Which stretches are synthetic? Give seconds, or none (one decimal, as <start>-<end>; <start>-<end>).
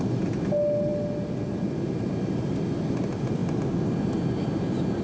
none